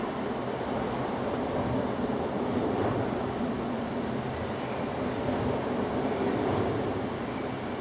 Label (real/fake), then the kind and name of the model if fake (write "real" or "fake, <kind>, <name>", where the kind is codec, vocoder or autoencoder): real